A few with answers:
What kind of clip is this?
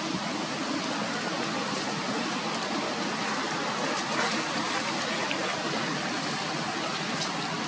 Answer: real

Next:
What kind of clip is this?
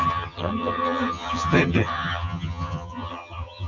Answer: fake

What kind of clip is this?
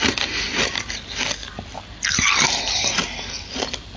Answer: real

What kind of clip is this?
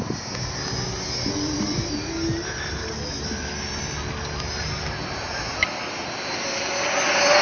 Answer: real